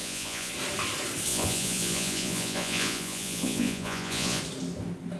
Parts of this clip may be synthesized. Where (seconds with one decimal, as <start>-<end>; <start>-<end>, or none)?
0.0-0.5; 1.3-4.4